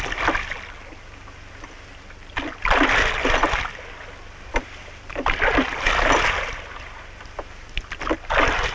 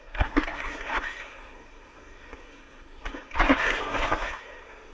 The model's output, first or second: second